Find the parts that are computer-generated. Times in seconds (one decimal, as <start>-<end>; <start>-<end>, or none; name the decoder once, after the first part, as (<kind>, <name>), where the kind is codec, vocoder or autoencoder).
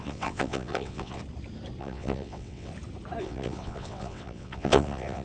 0.0-1.2 (vocoder, WaveNeXt); 1.8-2.7; 3.2-5.2